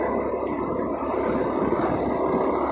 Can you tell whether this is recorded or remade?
recorded